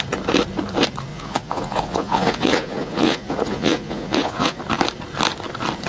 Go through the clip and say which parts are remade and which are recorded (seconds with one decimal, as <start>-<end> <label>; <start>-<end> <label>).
0.0-1.1 recorded; 1.1-4.6 remade; 4.6-5.9 recorded